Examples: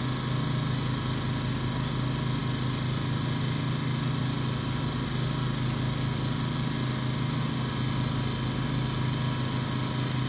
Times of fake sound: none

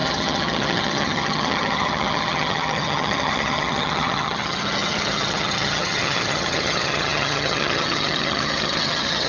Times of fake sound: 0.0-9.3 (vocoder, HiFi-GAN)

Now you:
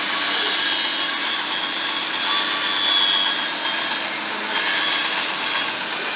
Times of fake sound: none

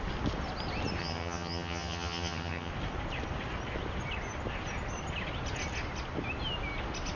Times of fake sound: 1.0-2.7 (vocoder, HiFi-GAN)

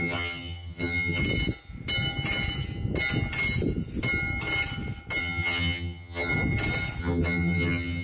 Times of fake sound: 0.0-1.2 (vocoder, HiFi-GAN); 5.2-6.3; 7.0-8.0

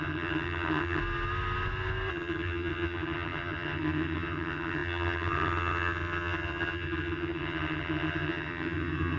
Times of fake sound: 0.0-1.0 (vocoder, HiFi-GAN); 2.1-9.2